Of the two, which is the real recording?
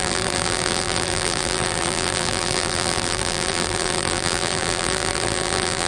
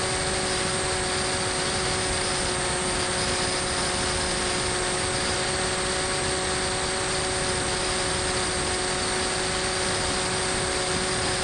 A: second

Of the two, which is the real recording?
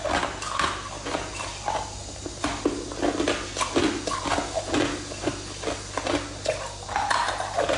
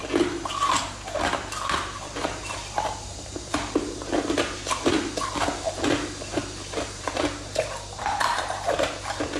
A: first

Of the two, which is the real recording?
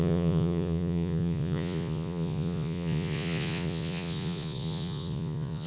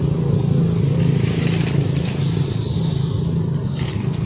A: second